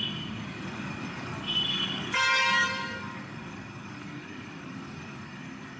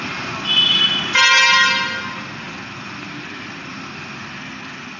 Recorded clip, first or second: second